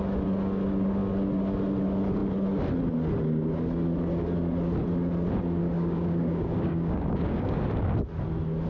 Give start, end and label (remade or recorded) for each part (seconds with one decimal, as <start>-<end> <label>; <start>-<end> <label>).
0.0-5.6 recorded; 5.6-7.6 remade; 7.6-8.7 recorded